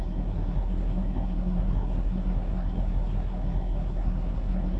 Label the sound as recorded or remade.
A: remade